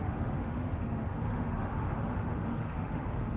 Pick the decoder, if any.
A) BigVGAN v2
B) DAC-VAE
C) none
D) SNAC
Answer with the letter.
B